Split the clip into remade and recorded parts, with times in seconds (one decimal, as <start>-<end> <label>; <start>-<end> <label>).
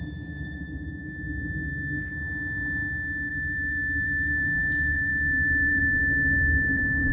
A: 0.0-1.0 remade; 1.0-3.3 recorded; 3.3-7.1 remade